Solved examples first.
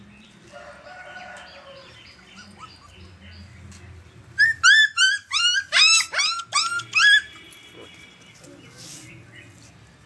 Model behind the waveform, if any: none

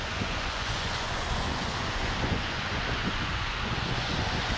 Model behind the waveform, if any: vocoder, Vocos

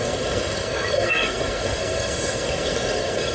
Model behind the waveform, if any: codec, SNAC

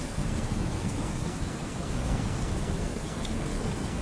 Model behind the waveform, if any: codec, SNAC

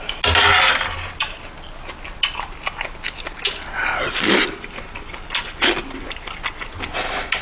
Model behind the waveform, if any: none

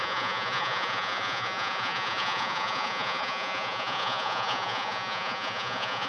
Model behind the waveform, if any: vocoder, Vocos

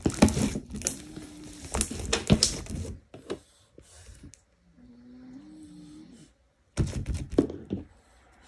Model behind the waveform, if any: none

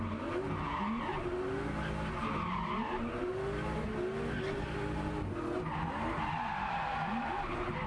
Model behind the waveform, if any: none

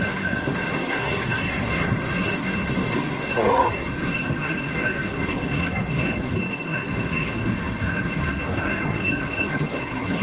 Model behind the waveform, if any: codec, SNAC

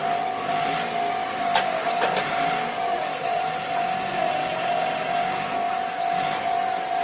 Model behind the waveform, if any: none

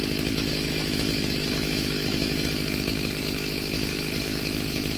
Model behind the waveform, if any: autoencoder, DAC-VAE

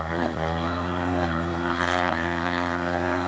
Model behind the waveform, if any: codec, SNAC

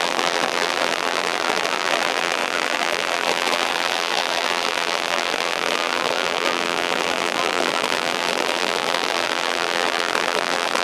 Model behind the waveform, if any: vocoder, BigVGAN v2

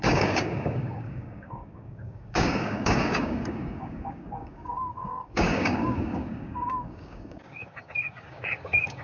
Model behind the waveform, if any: codec, DAC